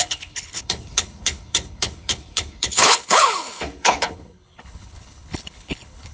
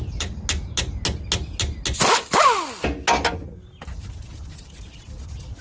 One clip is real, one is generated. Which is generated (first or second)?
first